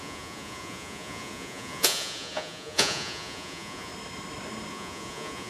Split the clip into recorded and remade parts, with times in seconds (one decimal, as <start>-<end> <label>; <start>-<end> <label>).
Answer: 0.0-3.9 remade; 3.9-4.7 recorded; 4.7-5.5 remade